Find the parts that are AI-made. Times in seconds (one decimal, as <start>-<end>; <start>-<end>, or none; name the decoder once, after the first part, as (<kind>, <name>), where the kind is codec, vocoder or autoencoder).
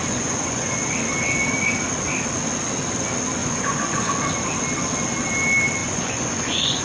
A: 0.0-0.7 (vocoder, Vocos); 3.4-4.1; 5.8-6.8